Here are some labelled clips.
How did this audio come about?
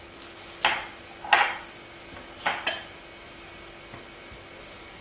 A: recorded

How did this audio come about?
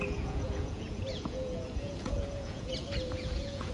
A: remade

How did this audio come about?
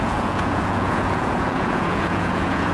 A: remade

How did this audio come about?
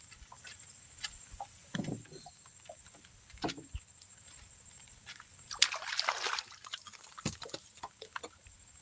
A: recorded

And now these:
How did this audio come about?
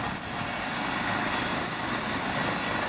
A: recorded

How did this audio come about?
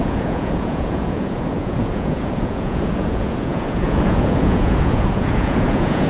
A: remade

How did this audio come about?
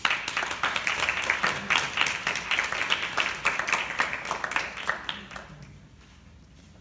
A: recorded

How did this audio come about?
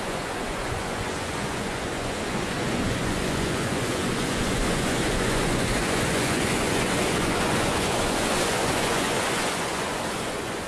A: remade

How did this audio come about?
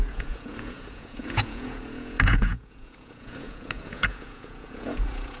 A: remade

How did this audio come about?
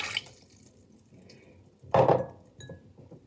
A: recorded